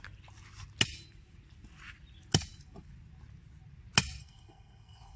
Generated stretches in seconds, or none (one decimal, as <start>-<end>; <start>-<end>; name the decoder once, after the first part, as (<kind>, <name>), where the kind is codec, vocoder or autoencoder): 4.2-5.2 (codec, SNAC)